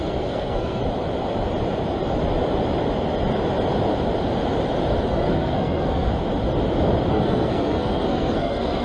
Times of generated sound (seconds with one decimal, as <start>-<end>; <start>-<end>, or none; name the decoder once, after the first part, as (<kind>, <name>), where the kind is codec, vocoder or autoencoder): 0.0-0.8 (codec, SNAC); 5.1-6.1; 7.1-8.8